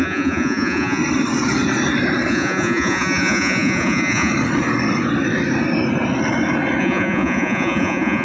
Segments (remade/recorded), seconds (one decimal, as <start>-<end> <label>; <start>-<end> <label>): 0.0-1.0 remade; 1.0-2.3 recorded; 2.3-4.3 remade; 4.3-6.8 recorded; 6.8-8.2 remade